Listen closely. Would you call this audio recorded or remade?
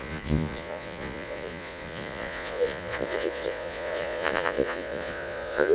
remade